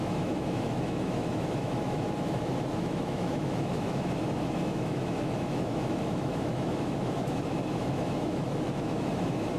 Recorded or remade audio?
remade